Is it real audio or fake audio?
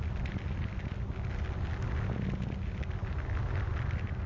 real